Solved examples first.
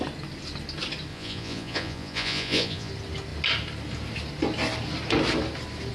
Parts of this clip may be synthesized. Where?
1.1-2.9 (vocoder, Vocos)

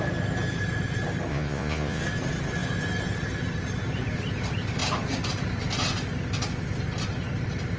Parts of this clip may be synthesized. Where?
1.3-2.0 (vocoder, Vocos)

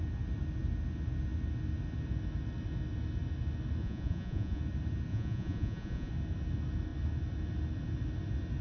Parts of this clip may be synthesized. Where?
3.8-4.6 (vocoder, Vocos); 5.1-6.1